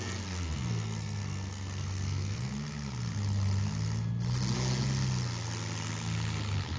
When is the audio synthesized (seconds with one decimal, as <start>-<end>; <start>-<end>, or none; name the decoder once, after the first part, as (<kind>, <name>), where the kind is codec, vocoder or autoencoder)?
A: 0.0-2.5 (codec, SNAC)